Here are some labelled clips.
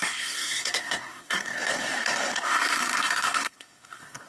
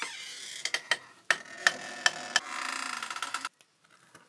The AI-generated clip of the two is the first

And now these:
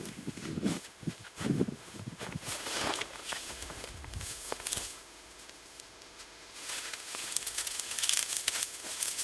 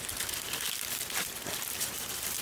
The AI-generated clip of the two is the first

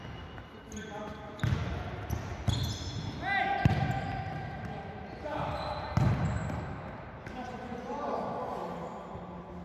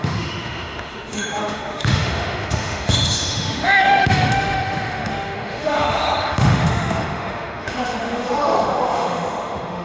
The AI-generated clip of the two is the second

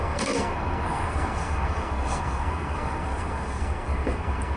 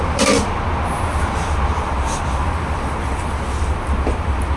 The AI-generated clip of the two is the first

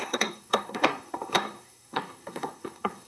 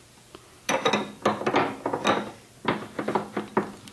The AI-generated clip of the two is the first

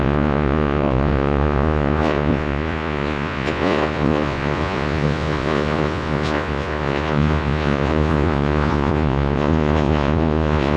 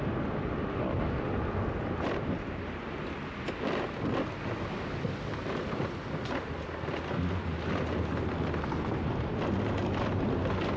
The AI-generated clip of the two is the first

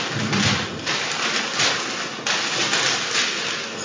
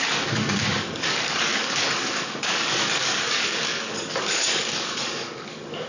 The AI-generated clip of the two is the second